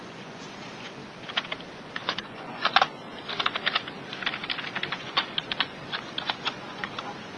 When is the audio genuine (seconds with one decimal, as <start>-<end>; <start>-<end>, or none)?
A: 1.0-1.7; 3.0-4.9